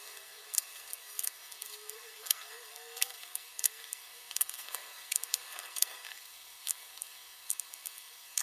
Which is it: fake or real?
fake